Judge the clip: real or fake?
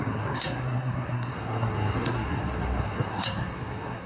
fake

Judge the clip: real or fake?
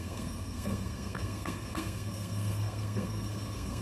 fake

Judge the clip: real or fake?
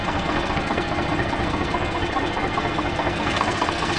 fake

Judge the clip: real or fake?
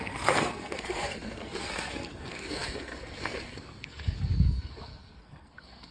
fake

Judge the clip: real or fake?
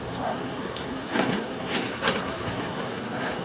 fake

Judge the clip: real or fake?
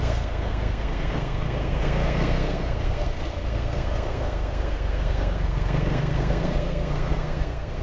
fake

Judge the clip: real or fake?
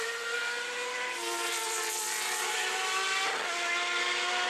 real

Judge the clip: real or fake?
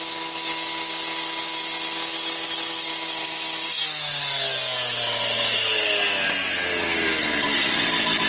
real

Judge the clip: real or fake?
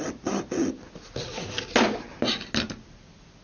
real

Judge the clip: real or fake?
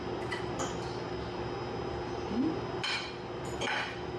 real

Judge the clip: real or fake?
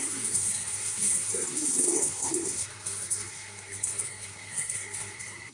fake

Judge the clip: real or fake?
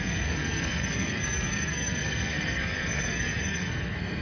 fake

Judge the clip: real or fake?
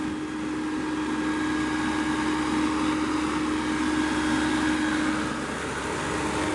real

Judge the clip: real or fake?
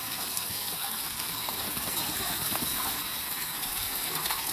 fake